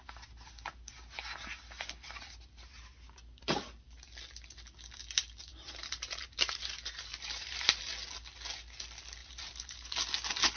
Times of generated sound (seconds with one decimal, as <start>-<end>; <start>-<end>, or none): 5.5-7.8; 9.2-9.9